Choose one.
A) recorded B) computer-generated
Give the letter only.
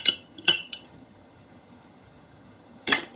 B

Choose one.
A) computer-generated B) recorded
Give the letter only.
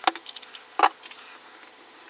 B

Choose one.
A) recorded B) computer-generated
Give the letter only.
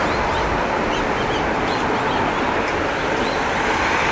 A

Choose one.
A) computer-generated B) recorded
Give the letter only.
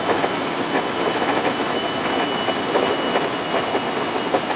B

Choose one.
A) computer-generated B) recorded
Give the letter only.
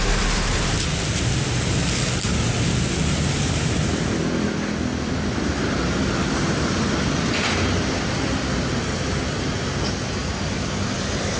B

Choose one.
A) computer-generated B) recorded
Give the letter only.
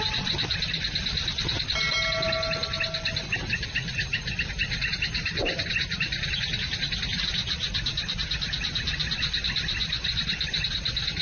B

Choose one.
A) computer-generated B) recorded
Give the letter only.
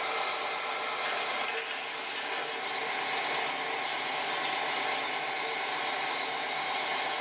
B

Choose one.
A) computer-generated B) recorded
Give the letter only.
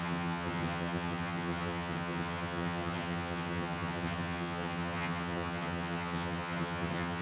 A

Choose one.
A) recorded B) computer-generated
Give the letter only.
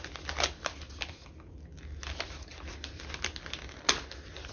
A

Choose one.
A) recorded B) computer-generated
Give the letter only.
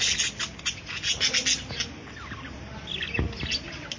A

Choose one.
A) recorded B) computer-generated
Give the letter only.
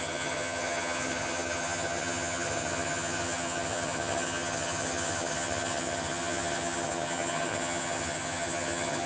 B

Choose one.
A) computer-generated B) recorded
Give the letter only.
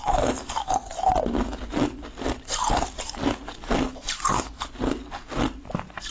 B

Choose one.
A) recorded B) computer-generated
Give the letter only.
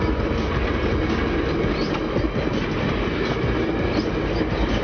A